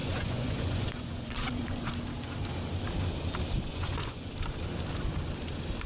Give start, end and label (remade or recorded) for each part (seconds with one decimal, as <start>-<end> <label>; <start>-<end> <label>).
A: 0.0-1.9 remade; 1.9-3.7 recorded; 3.7-4.3 remade; 4.3-5.9 recorded